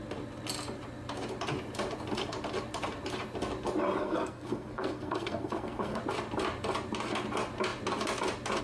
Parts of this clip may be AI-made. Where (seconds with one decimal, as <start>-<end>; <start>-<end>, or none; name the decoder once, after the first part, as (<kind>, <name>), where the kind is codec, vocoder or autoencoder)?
4.0-6.0 (codec, SNAC)